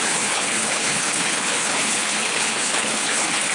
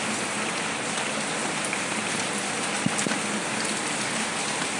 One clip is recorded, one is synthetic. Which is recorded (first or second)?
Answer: second